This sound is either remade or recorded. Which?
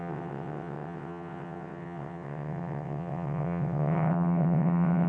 remade